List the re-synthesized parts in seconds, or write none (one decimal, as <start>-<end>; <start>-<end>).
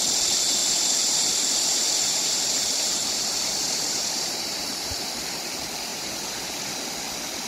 0.6-5.1; 5.9-6.8